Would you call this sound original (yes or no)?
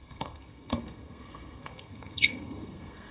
no